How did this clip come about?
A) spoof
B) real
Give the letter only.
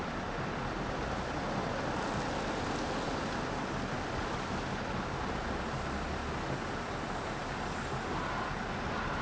B